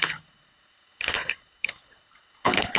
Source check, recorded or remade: remade